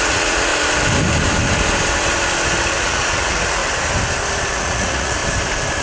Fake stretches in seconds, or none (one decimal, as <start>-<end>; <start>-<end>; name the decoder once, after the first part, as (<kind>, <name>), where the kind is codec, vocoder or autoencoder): 0.0-0.5 (vocoder, Vocos); 2.8-3.6; 4.5-5.2